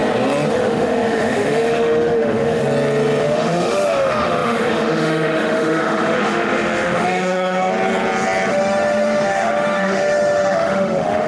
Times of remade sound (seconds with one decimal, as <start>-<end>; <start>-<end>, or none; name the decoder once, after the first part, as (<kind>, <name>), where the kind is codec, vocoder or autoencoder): 0.5-2.6 (autoencoder, DAC-VAE); 3.2-7.7; 8.5-11.3